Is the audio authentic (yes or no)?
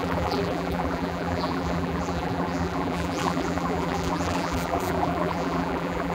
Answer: no